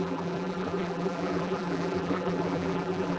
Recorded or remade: remade